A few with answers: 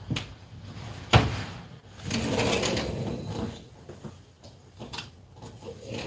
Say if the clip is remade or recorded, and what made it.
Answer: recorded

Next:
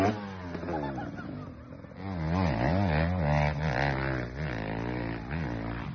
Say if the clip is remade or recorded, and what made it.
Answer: recorded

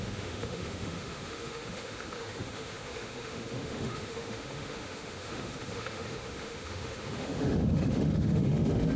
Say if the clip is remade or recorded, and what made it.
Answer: remade, autoencoder, DAC-VAE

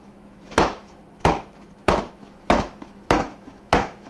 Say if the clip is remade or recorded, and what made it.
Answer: remade, autoencoder, DAC-VAE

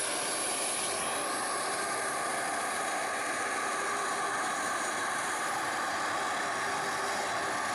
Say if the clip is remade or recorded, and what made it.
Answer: recorded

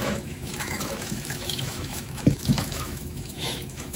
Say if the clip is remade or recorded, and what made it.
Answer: remade, autoencoder, DAC-VAE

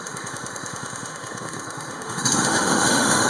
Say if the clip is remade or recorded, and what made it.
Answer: remade, autoencoder, DAC-VAE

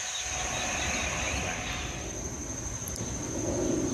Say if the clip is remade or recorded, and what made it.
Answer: recorded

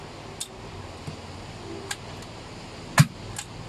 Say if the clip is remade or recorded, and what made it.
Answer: recorded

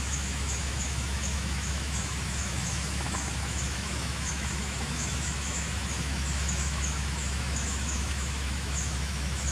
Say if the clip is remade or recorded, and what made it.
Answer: remade, autoencoder, DAC-VAE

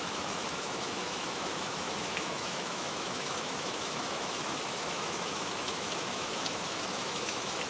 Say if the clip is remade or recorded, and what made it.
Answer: remade, autoencoder, DAC-VAE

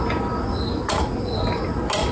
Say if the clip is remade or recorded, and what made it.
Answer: recorded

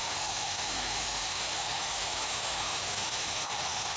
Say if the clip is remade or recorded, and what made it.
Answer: remade, autoencoder, DAC-VAE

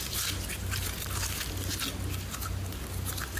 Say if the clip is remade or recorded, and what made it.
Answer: recorded